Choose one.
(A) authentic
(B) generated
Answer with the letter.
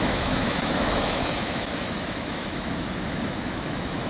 B